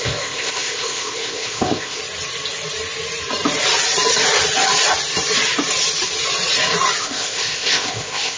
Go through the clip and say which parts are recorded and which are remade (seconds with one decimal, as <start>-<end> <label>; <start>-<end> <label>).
0.0-2.0 remade; 2.0-7.0 recorded; 7.0-8.4 remade